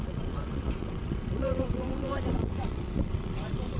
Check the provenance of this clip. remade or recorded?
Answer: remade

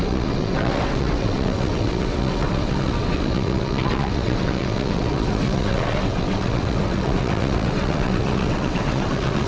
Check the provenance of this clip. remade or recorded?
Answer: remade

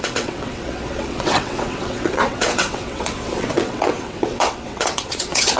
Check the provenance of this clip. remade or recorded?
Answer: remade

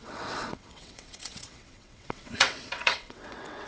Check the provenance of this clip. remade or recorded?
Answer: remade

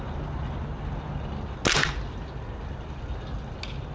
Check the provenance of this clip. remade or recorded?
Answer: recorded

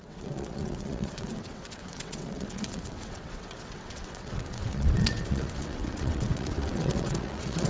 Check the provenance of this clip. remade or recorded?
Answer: remade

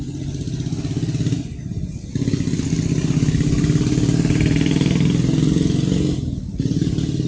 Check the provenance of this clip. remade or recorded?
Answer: recorded